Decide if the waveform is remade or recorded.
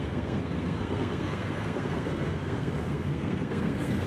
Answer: remade